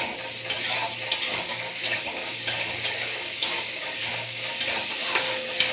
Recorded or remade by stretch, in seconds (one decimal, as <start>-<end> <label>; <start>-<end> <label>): 0.0-1.3 recorded; 1.3-4.6 remade; 4.6-5.0 recorded; 5.0-5.7 remade